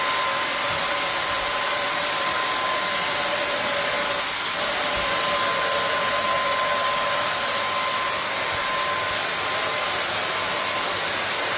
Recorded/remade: recorded